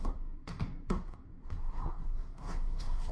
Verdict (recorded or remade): remade